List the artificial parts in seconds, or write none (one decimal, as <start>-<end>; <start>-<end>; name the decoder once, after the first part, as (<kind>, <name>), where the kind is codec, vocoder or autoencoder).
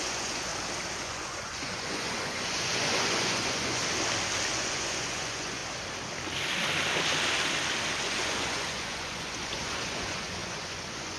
0.0-0.5 (vocoder, Vocos); 1.0-3.8; 4.5-5.6; 8.0-11.2